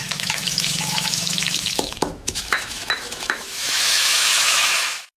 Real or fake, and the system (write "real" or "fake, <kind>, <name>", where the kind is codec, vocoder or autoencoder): fake, autoencoder, DAC-VAE